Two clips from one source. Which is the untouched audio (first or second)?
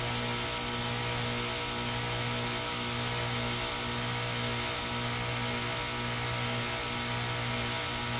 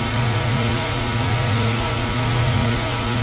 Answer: first